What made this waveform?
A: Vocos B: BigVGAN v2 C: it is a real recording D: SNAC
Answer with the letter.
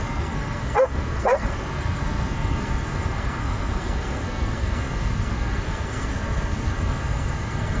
D